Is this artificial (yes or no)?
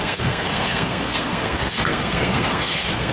yes